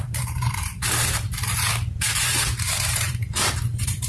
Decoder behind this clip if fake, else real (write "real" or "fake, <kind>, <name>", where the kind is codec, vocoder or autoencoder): fake, vocoder, BigVGAN v2